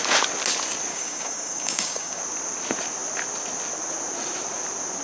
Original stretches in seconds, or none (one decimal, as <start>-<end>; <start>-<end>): 0.0-0.9; 2.2-5.0